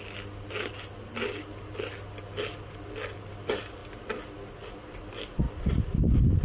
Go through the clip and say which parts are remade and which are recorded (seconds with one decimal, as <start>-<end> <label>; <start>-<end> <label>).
0.0-6.4 recorded